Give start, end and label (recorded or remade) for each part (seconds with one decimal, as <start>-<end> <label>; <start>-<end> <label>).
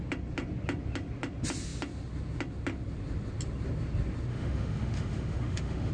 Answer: 0.0-4.3 recorded; 4.3-5.9 remade